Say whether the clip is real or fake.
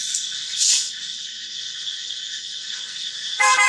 fake